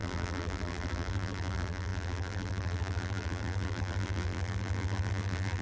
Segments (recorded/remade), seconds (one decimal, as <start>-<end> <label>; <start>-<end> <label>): 0.0-5.6 remade